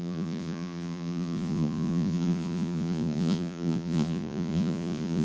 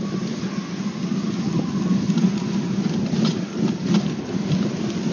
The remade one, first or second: first